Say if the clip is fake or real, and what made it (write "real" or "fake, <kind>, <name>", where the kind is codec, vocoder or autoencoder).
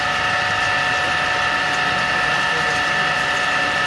real